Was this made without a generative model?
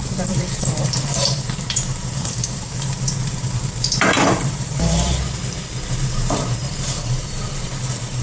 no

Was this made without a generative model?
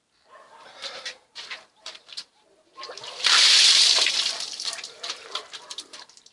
no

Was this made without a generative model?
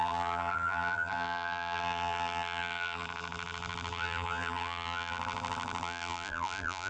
no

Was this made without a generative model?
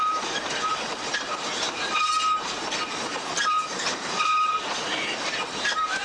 no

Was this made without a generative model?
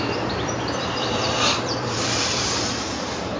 no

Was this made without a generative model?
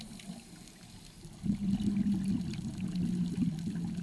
yes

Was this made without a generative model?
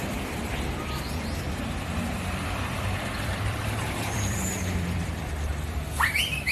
no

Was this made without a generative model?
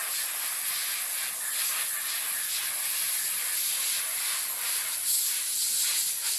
yes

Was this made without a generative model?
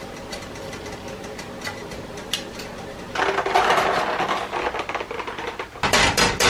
yes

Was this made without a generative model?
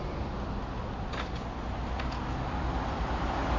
yes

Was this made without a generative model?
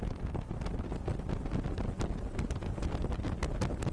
yes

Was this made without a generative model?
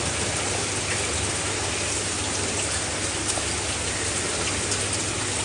yes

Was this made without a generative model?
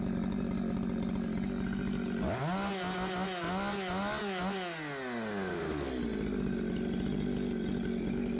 yes